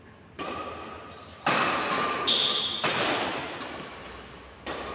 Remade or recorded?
recorded